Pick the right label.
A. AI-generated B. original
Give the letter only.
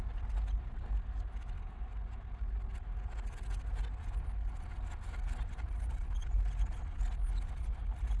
B